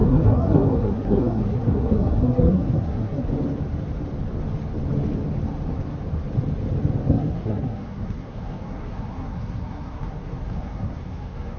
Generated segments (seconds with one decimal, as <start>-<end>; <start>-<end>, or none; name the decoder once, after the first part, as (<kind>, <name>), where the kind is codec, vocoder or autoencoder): 0.0-3.3 (codec, SNAC); 7.1-11.6